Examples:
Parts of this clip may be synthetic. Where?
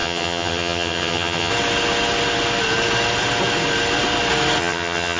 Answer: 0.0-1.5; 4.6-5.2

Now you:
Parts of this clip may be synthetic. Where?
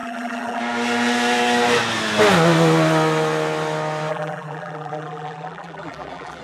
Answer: 0.0-0.6; 4.1-6.4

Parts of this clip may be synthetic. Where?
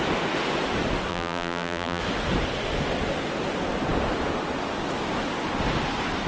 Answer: 1.1-2.0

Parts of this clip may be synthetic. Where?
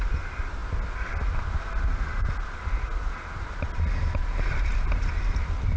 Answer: none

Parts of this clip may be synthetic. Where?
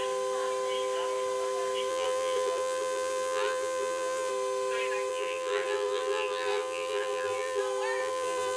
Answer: 1.9-4.3; 5.1-7.6; 8.0-8.6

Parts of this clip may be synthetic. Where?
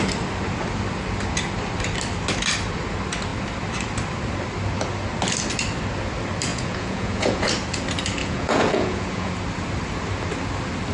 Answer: 6.5-7.5; 8.2-9.3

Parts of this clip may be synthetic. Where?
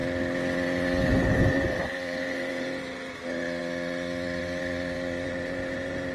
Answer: 1.0-3.6; 4.4-6.1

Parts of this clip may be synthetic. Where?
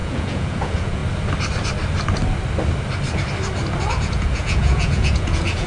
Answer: 0.0-1.0; 3.9-5.7